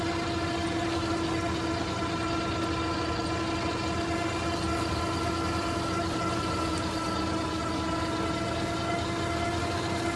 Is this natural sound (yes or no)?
yes